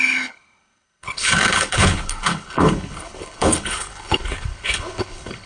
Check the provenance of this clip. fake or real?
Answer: fake